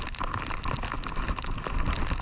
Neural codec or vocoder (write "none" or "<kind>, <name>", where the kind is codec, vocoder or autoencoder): none